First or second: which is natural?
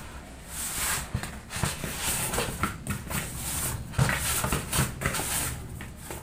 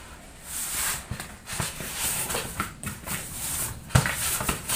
first